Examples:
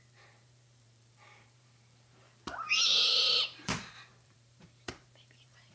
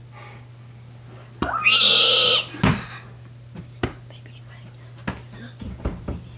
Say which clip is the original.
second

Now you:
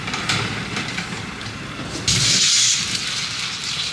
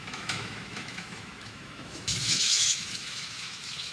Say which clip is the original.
first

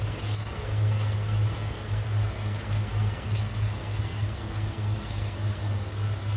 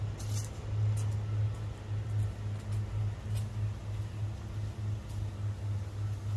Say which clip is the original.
second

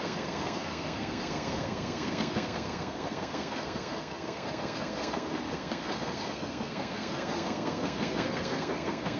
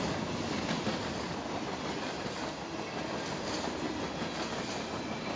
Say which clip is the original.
second